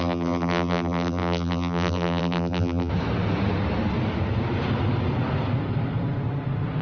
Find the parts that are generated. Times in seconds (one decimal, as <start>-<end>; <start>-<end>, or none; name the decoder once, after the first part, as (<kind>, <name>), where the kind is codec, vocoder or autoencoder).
0.0-2.9 (vocoder, BigVGAN v2)